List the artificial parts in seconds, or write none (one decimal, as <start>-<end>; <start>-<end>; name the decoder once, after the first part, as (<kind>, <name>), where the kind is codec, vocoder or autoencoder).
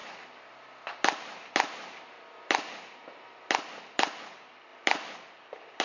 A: none